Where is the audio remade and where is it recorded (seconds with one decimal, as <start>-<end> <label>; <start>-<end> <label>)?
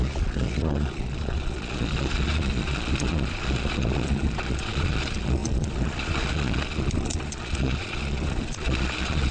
0.0-9.3 remade